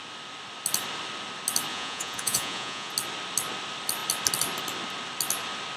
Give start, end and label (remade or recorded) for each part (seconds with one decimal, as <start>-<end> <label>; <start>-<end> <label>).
0.0-1.7 recorded; 1.7-2.9 remade; 2.9-5.8 recorded